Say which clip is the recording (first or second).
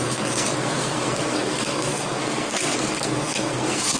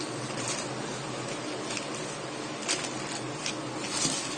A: second